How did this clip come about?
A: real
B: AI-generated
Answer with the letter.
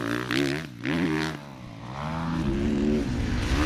A